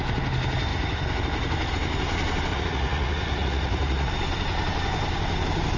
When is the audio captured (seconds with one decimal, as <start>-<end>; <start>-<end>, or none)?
0.0-2.5; 4.1-5.8